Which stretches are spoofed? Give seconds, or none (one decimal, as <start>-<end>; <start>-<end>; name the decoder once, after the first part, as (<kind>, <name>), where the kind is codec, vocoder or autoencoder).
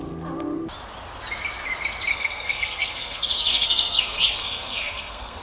2.1-5.4 (codec, SNAC)